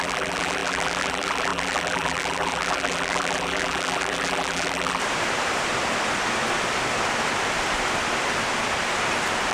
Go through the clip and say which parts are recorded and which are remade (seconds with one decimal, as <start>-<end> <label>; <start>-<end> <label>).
0.0-5.0 remade; 5.0-9.5 recorded